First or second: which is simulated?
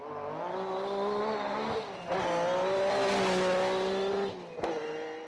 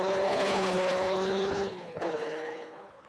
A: second